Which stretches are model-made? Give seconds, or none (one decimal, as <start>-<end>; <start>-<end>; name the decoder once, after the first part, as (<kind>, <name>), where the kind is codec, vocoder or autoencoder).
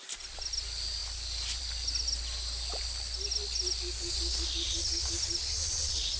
none